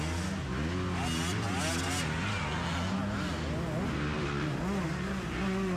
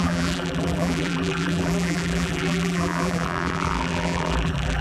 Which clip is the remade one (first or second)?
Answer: second